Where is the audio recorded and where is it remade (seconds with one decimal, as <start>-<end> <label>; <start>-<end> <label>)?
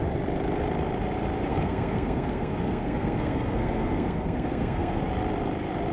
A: 0.0-1.5 recorded; 1.5-5.0 remade; 5.0-5.9 recorded